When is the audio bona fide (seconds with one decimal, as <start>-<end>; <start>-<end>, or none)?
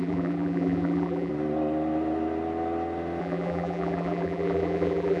1.3-3.2